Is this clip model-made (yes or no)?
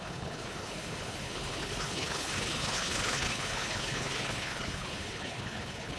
yes